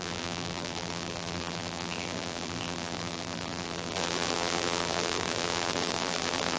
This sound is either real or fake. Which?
fake